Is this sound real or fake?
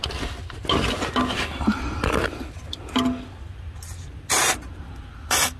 real